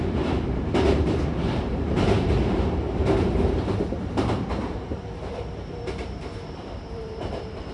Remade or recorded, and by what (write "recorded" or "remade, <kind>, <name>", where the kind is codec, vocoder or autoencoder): remade, vocoder, BigVGAN v2